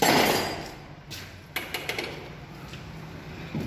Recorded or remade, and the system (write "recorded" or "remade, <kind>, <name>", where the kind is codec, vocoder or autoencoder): recorded